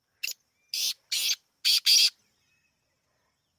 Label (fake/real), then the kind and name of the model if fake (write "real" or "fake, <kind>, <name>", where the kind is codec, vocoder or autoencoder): real